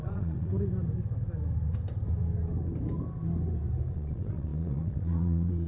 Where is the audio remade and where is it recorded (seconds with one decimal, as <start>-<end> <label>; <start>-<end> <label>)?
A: 0.0-0.5 remade; 0.5-3.9 recorded; 3.9-5.7 remade